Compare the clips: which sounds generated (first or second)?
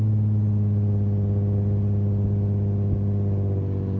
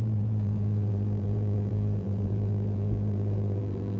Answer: second